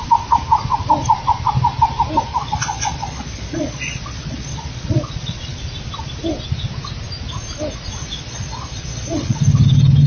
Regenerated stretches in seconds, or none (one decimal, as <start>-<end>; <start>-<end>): 2.3-5.6; 8.0-9.4